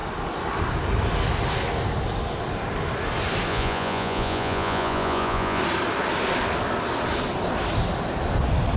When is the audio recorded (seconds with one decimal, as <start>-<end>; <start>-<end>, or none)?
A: 0.0-3.5; 5.6-8.8